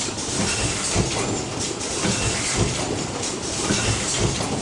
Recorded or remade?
recorded